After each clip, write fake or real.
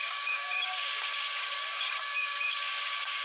fake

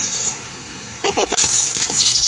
fake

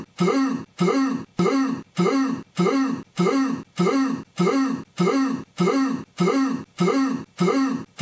real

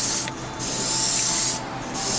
real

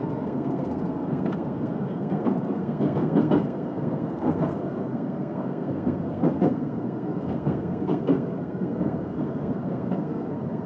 fake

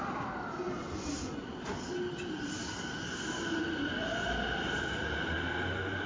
real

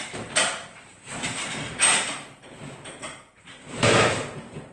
fake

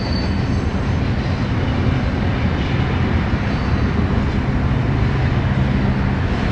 real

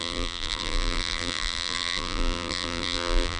fake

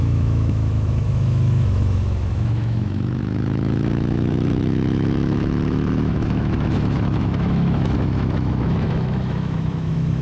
fake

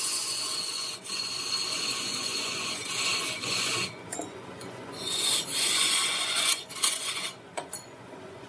fake